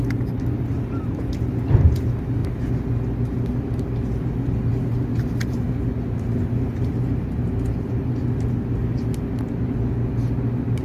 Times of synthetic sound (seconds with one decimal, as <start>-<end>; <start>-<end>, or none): none